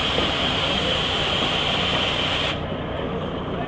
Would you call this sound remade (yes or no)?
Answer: no